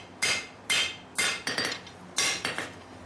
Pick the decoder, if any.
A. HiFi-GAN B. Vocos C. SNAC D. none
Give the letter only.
D